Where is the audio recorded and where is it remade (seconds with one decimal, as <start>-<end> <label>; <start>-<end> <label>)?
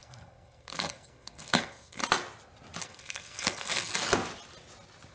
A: 0.0-2.0 remade; 2.0-2.8 recorded; 2.8-3.9 remade; 3.9-5.1 recorded